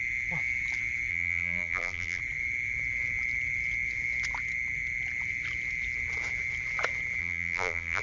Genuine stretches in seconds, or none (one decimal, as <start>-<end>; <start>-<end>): 0.0-1.1; 2.2-7.2